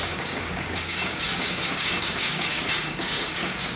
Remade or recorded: remade